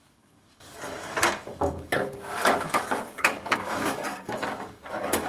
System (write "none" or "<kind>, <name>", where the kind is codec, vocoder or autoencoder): codec, DAC